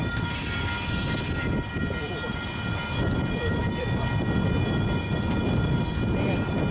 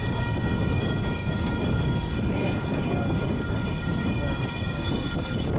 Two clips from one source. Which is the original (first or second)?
first